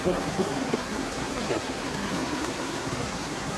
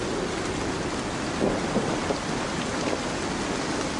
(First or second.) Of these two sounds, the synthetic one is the first